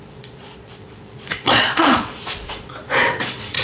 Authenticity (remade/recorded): remade